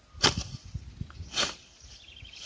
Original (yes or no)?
yes